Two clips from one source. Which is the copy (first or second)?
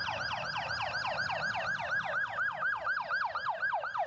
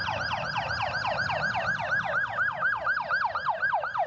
second